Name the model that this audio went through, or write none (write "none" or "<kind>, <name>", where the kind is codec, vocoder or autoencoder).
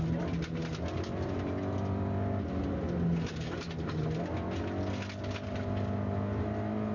none